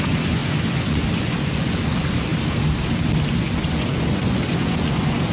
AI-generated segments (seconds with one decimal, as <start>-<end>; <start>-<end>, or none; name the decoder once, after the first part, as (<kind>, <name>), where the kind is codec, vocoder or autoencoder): 0.0-2.3 (vocoder, Vocos); 3.4-5.3

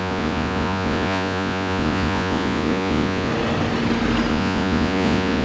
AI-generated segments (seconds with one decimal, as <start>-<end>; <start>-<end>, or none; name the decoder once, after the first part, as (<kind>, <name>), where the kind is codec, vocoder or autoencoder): 0.0-3.3 (vocoder, Vocos); 4.3-5.4

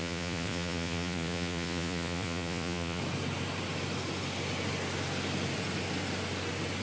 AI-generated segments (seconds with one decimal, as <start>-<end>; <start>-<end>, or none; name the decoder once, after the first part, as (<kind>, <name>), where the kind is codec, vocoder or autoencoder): 0.0-3.0 (vocoder, Vocos)

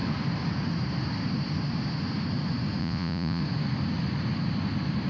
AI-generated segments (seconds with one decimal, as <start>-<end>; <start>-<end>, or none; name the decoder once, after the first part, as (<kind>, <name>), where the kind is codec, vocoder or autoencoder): 2.8-3.4 (vocoder, Vocos)